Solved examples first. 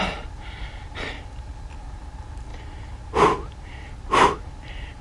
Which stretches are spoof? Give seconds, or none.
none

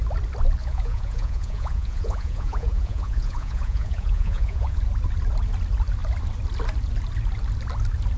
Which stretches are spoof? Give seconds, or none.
0.6-4.8 (vocoder, Vocos)

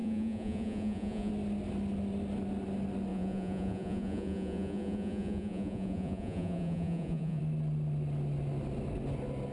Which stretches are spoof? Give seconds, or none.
0.0-1.3 (vocoder, Vocos); 3.1-7.4

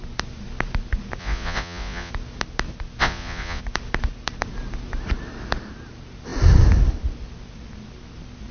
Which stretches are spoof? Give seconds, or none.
1.2-2.1 (vocoder, Vocos); 3.0-3.6

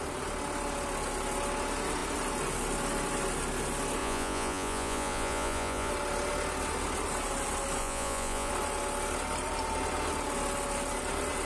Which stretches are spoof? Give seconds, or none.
4.0-5.9 (vocoder, Vocos); 7.8-8.5

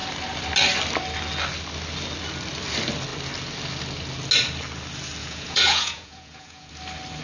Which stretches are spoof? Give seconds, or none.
5.2-6.7 (vocoder, Vocos)

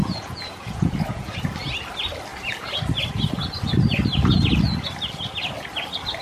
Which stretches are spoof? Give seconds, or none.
0.0-1.4 (vocoder, Vocos)

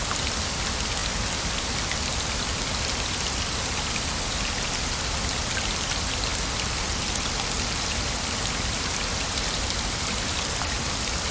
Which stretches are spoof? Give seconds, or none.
none